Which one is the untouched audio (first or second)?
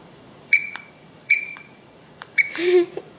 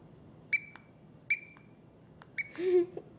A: second